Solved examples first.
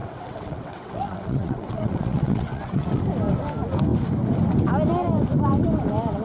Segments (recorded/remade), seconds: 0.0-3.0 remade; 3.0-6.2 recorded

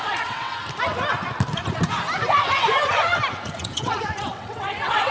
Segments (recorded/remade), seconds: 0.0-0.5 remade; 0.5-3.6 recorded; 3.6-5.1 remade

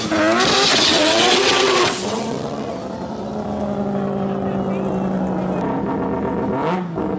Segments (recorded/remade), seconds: 0.0-0.7 recorded; 0.7-2.7 remade; 2.7-7.2 recorded

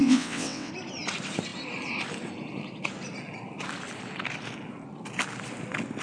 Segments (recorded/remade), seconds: 0.0-0.7 remade; 0.7-6.0 recorded